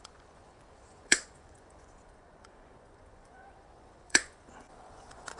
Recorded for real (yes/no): no